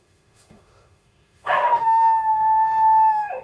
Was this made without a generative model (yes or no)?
no